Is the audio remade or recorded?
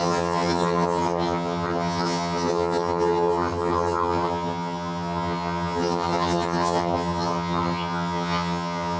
remade